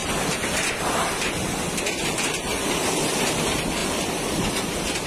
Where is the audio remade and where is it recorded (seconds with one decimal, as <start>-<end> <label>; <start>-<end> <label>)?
0.0-1.1 remade; 1.1-3.8 recorded; 3.8-4.5 remade; 4.5-5.1 recorded